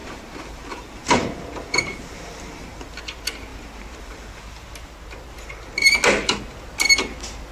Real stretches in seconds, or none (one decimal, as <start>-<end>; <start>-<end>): 3.0-3.5; 4.4-7.5